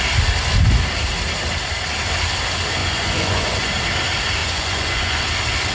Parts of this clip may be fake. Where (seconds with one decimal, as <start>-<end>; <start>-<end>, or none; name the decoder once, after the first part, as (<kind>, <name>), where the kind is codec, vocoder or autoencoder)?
2.8-3.7 (vocoder, Vocos); 4.4-5.2